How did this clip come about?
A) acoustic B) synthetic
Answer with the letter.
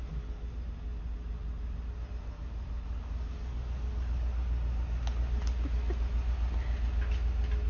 A